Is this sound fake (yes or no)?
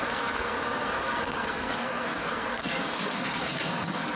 yes